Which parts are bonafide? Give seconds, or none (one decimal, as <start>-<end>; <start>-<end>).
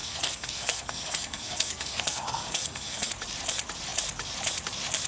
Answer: 3.1-5.1